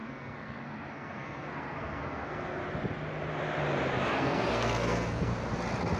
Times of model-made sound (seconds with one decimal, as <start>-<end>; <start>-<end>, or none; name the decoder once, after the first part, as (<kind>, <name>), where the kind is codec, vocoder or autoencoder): 0.0-2.6 (codec, SNAC); 4.1-5.3